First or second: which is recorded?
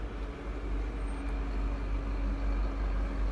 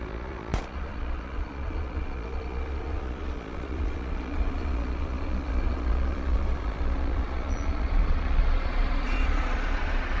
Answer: first